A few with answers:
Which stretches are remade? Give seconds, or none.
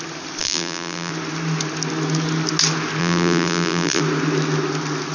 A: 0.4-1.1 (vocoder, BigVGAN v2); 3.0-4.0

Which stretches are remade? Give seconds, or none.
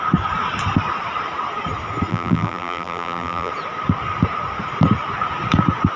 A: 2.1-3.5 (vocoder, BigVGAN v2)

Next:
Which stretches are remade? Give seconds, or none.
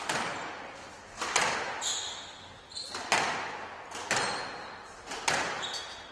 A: none